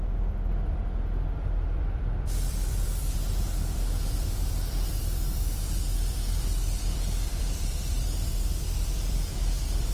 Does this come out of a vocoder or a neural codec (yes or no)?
yes